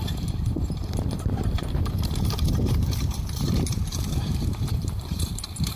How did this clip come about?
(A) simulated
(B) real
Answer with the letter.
A